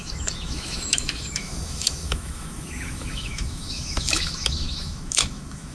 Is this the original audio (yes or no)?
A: no